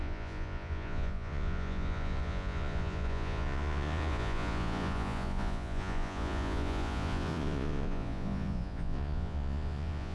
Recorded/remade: remade